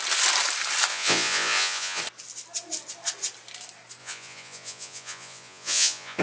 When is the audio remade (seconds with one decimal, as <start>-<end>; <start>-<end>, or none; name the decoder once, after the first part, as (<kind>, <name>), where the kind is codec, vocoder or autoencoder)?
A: 0.9-2.0 (vocoder, Vocos); 4.0-6.2